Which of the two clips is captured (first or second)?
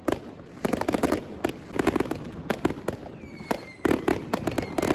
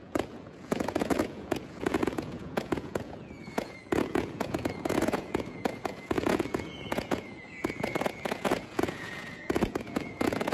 first